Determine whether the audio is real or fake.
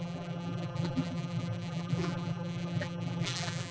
fake